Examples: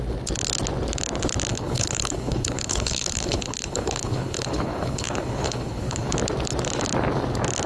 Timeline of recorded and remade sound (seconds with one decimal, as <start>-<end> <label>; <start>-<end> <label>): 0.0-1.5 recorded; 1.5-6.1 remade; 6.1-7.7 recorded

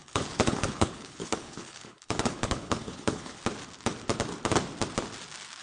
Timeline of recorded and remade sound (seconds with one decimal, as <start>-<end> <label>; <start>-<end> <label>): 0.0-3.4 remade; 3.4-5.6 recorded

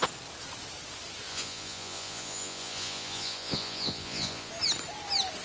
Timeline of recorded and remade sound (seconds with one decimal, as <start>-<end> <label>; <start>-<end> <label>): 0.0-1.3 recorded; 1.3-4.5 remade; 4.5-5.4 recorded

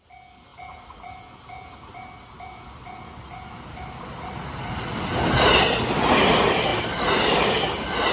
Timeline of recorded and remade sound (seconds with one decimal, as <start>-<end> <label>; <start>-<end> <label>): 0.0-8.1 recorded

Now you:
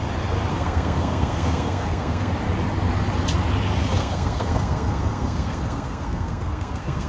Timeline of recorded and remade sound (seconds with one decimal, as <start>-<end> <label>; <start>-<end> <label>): 0.0-0.5 recorded; 0.5-2.3 remade; 2.3-4.0 recorded; 4.0-7.1 remade

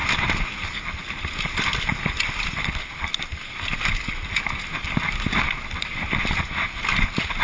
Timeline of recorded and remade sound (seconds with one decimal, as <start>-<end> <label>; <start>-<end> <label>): 0.0-7.4 recorded